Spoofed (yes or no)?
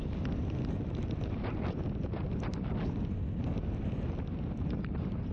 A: no